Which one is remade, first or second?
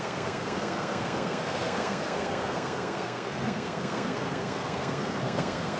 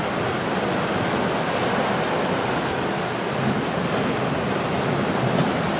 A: first